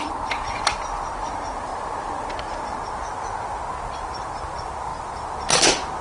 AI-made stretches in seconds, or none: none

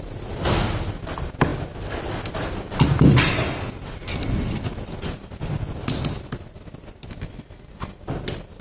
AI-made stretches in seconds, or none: none

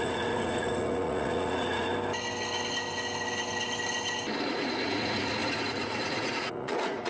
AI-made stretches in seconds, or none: 0.0-1.9; 4.5-7.1

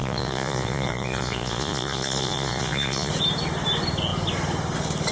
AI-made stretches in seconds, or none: 0.0-3.1

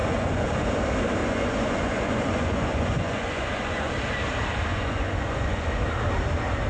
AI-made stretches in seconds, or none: 0.0-0.7; 1.2-3.9; 4.7-5.8

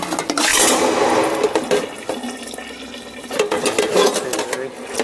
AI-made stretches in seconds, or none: none

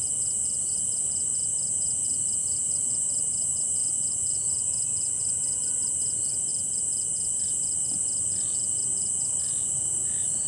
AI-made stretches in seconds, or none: 3.8-5.6

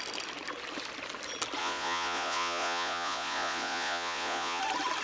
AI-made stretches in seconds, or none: 1.6-4.6